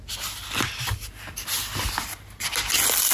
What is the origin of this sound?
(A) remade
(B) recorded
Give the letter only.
B